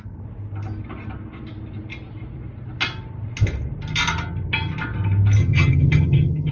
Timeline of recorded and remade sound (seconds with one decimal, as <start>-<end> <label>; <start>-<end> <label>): 0.0-5.4 recorded; 5.4-6.5 remade